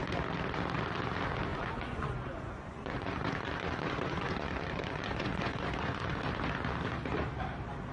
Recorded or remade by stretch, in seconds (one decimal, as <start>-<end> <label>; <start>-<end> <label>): 0.0-1.5 recorded; 1.5-6.2 remade; 6.2-7.9 recorded